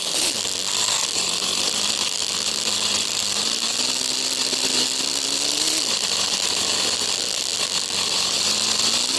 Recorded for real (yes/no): yes